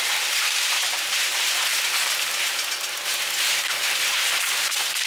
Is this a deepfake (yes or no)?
yes